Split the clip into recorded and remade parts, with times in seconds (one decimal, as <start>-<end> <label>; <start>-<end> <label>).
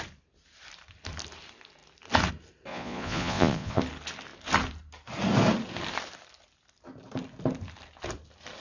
0.0-2.7 recorded; 2.7-3.8 remade; 3.8-8.6 recorded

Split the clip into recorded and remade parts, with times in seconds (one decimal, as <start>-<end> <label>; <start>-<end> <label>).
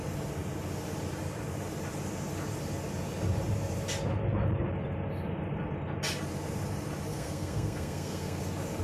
0.0-7.1 recorded; 7.1-8.4 remade; 8.4-8.8 recorded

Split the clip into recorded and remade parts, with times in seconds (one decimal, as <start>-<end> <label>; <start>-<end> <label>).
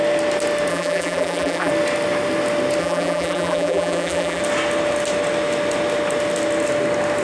0.0-0.7 recorded; 0.7-1.7 remade; 1.7-2.8 recorded; 2.8-4.4 remade; 4.4-7.2 recorded